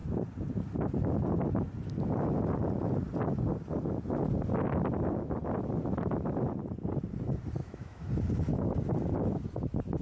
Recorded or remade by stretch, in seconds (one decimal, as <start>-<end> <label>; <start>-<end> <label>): 0.0-7.6 recorded; 7.6-8.1 remade; 8.1-10.0 recorded